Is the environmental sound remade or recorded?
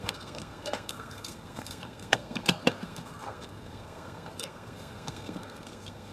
remade